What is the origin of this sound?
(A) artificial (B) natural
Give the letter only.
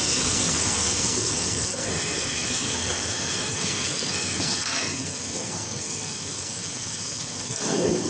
A